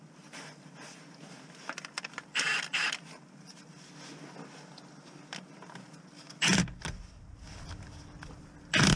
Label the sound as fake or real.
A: real